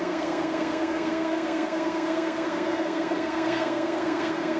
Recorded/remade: remade